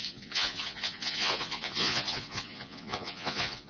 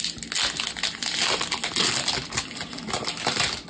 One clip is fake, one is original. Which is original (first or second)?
second